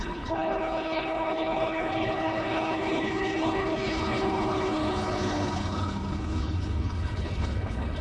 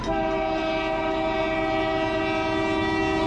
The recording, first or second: second